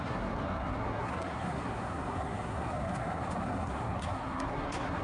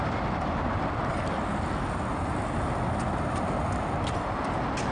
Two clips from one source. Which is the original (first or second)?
second